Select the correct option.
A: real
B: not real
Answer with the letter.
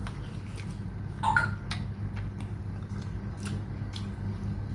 A